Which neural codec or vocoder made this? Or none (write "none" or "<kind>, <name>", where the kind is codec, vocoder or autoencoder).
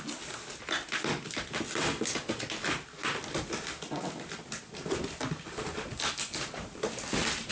none